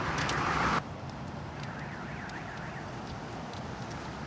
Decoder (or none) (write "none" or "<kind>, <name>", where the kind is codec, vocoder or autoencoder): none